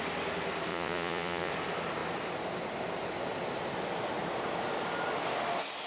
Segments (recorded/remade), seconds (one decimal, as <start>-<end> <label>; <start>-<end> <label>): 0.0-0.7 recorded; 0.7-1.5 remade; 1.5-5.9 recorded